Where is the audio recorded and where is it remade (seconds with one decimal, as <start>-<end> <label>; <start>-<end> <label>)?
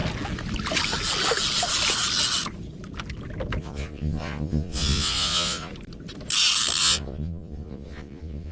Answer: 0.0-3.6 recorded; 3.6-5.7 remade; 5.7-6.8 recorded; 6.8-8.5 remade